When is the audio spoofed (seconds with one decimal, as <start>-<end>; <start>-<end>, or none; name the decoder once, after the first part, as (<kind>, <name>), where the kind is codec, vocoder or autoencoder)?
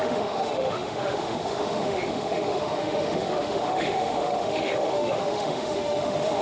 0.0-6.4 (autoencoder, DAC-VAE)